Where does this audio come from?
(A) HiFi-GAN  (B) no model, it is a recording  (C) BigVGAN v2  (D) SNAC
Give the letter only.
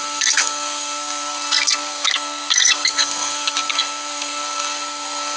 D